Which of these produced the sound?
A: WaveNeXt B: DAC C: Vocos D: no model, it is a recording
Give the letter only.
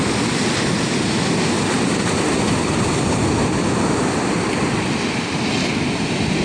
D